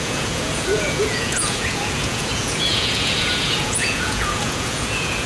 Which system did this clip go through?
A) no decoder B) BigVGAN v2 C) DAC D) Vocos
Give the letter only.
D